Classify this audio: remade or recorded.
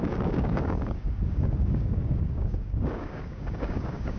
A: remade